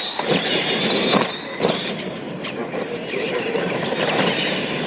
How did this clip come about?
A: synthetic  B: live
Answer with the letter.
A